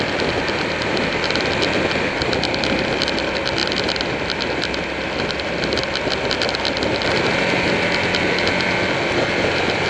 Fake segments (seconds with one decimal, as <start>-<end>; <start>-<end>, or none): none